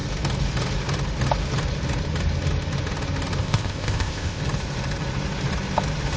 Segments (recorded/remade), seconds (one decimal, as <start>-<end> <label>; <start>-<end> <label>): 0.0-3.4 recorded; 3.4-4.4 remade; 4.4-6.2 recorded